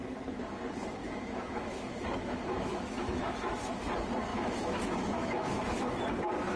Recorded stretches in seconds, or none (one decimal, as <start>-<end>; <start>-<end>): 0.0-1.0; 3.7-4.3; 6.0-6.6